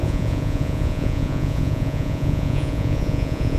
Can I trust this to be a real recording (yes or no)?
no